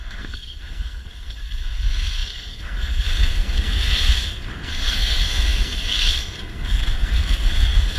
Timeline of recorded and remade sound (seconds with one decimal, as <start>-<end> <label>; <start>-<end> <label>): 0.0-8.0 remade